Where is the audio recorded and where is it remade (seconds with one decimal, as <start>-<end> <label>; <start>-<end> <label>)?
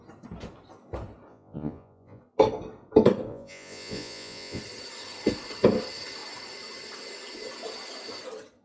0.0-1.3 recorded; 1.3-2.2 remade; 2.2-3.3 recorded; 3.3-4.6 remade; 4.6-8.6 recorded